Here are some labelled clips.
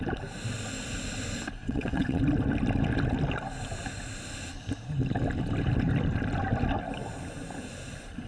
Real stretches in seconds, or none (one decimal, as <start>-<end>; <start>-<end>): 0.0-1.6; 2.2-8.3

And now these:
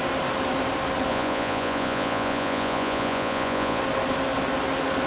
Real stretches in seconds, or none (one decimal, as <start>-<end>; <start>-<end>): 0.0-1.1; 3.8-5.1

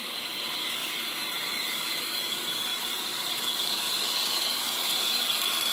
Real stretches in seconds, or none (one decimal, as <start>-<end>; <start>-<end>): none

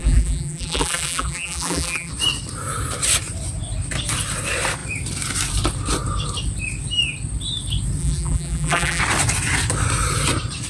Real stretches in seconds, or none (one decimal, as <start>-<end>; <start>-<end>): 2.1-8.0; 9.0-10.7

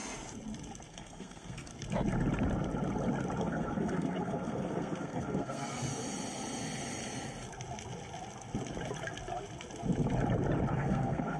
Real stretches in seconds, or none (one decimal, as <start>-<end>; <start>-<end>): 0.0-0.9; 1.7-3.4; 5.9-10.7

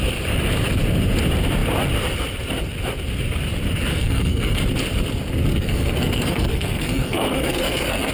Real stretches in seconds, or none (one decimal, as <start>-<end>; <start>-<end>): 0.0-3.9; 4.6-5.5

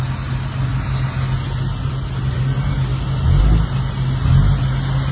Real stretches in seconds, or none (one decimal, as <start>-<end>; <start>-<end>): 0.0-5.1